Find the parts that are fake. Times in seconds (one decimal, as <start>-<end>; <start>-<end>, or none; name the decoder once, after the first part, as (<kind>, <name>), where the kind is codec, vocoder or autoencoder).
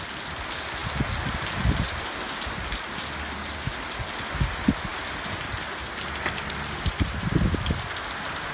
none